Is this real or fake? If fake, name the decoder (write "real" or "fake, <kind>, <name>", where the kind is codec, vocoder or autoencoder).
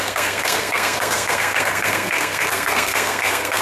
fake, codec, SNAC